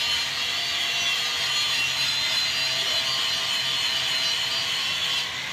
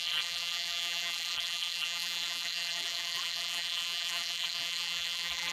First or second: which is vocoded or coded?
second